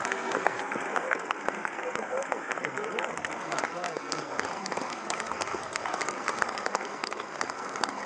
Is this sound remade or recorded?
remade